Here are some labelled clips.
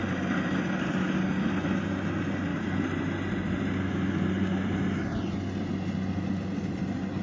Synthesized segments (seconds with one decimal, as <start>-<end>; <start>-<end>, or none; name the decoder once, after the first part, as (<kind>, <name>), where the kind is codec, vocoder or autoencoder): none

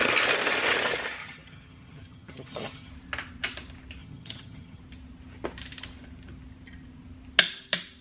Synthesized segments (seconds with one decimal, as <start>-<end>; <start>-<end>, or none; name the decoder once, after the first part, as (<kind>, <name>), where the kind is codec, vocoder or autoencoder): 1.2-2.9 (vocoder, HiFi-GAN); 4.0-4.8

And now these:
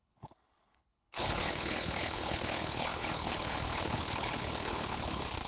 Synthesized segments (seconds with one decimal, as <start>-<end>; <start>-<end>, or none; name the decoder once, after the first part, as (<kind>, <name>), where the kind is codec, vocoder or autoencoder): 0.0-5.5 (codec, HILCodec)

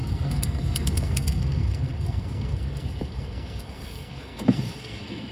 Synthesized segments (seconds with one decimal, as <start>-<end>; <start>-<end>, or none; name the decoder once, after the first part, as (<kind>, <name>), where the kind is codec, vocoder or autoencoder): 0.0-5.3 (codec, SNAC)

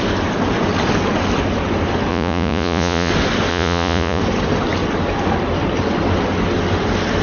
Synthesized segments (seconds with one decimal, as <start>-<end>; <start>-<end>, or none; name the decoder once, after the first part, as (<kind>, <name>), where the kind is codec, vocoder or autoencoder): 2.1-3.1 (vocoder, Vocos); 3.5-4.2

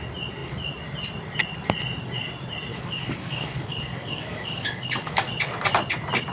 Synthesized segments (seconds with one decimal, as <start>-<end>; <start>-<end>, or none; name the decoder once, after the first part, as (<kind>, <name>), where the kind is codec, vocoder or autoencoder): 2.7-5.3 (codec, DAC)

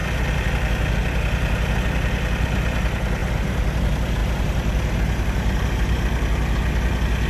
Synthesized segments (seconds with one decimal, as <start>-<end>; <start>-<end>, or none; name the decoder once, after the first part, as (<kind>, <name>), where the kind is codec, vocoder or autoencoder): 3.2-3.8 (vocoder, BigVGAN v2); 4.2-6.0